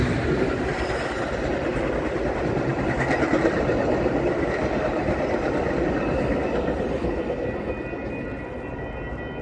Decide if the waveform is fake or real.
real